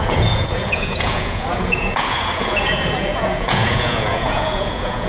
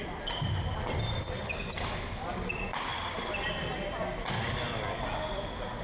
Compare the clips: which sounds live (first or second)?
second